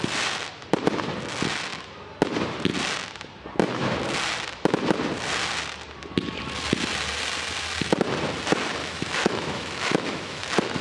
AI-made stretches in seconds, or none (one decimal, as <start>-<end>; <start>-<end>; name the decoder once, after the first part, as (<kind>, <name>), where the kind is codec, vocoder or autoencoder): 8.8-10.8 (autoencoder, DAC-VAE)